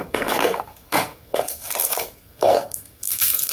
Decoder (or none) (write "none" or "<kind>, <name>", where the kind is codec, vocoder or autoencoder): codec, SNAC